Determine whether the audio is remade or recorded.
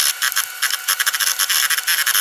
recorded